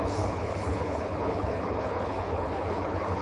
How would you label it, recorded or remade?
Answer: remade